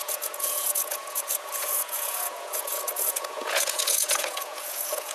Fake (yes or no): yes